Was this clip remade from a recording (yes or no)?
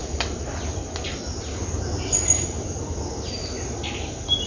no